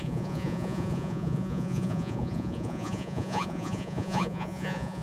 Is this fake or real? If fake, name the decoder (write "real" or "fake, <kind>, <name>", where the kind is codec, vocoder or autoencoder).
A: fake, vocoder, Vocos